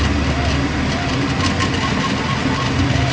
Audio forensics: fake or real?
fake